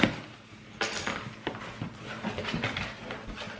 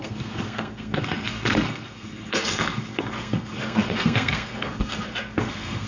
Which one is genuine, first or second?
first